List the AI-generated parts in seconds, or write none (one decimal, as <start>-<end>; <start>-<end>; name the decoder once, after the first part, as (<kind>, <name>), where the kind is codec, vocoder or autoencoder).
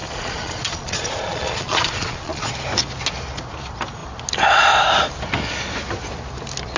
0.0-2.5 (vocoder, Vocos)